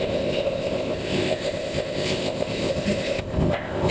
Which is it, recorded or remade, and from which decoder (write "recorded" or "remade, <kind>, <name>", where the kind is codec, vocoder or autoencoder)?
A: remade, codec, ZipCodec